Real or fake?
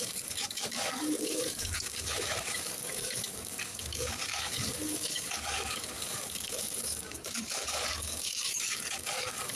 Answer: fake